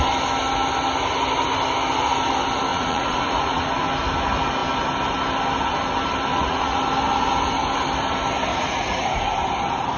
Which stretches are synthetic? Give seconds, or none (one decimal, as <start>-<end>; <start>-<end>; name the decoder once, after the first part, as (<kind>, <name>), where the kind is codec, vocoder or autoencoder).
2.7-3.7 (vocoder, Vocos); 6.3-6.8; 8.5-9.2